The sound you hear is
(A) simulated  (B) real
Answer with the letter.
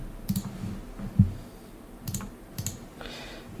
B